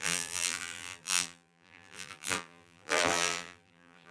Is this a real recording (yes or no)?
no